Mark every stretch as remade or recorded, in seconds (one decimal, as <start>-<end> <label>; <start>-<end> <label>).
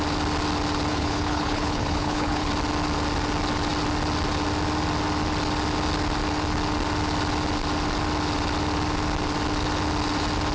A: 0.0-0.9 recorded; 0.9-2.5 remade; 2.5-10.5 recorded